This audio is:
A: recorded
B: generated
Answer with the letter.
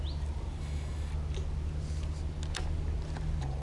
A